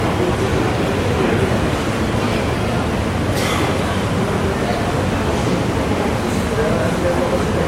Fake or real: real